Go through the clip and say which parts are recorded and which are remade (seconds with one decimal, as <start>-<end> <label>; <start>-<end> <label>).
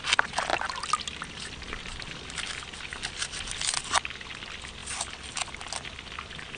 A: 0.0-6.6 recorded